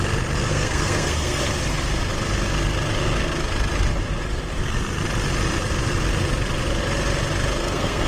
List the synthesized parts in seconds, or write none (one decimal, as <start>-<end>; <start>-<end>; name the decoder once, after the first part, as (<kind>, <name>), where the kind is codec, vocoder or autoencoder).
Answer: 0.5-1.4 (codec, SNAC); 7.6-8.1